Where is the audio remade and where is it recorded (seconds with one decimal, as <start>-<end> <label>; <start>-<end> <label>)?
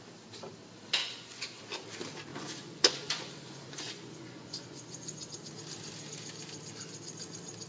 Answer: 0.0-1.0 recorded; 1.0-1.6 remade; 1.6-2.3 recorded; 2.3-5.3 remade; 5.3-7.7 recorded